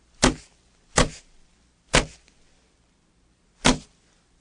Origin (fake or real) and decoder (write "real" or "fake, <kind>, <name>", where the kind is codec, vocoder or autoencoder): real